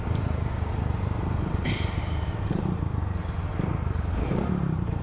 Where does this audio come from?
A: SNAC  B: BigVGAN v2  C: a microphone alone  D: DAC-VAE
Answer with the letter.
B